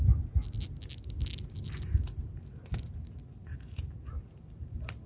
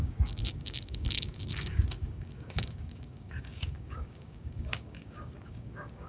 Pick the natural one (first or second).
first